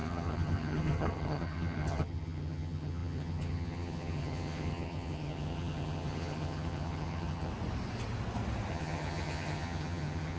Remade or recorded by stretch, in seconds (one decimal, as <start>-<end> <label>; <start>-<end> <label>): 0.0-7.5 remade; 7.5-8.7 recorded; 8.7-10.4 remade